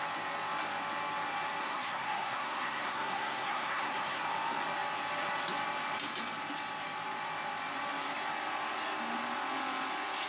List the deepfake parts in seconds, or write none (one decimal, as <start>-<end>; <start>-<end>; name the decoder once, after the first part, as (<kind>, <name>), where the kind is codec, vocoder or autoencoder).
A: 1.6-4.2 (codec, SNAC)